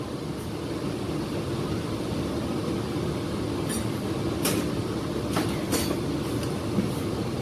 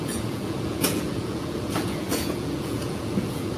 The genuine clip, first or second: first